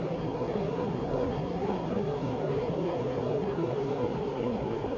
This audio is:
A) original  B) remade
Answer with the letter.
B